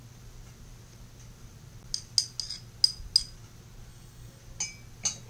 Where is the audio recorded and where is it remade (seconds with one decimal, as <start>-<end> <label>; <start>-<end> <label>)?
0.0-3.9 recorded; 3.9-4.4 remade; 4.4-5.3 recorded

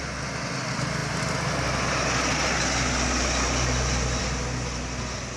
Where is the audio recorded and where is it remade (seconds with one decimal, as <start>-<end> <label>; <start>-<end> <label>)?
0.0-5.4 recorded

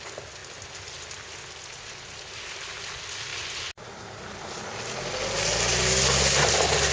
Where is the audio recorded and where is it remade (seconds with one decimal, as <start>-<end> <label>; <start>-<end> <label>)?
0.0-6.9 recorded

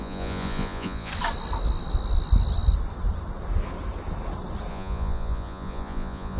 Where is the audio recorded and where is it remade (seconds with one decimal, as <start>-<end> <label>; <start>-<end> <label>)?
0.0-1.1 remade; 1.1-4.7 recorded; 4.7-6.4 remade

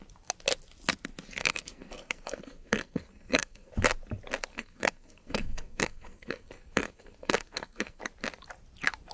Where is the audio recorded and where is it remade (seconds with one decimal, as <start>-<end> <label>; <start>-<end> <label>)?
0.0-1.4 recorded; 1.4-3.7 remade; 3.7-4.5 recorded; 4.5-8.0 remade; 8.0-9.1 recorded

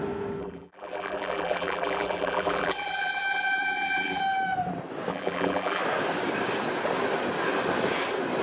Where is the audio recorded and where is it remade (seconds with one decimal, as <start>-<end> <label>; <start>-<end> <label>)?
0.0-0.4 recorded; 0.4-4.2 remade; 4.2-5.1 recorded; 5.1-5.8 remade; 5.8-8.4 recorded